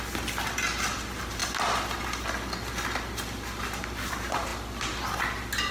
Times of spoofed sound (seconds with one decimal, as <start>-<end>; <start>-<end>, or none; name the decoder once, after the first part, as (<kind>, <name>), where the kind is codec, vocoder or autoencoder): none